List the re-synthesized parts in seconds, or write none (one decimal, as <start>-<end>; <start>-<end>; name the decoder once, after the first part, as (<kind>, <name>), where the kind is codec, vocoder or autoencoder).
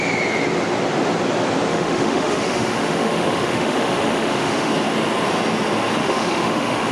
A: 1.7-4.7 (autoencoder, DAC-VAE); 6.0-6.9